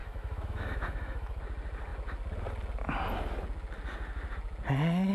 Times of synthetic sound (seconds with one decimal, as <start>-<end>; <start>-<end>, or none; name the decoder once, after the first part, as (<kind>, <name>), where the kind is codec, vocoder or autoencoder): 0.0-1.4 (autoencoder, DAC-VAE)